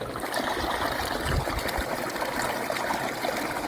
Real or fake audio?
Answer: real